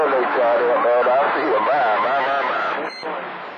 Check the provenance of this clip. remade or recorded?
recorded